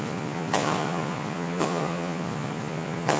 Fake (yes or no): yes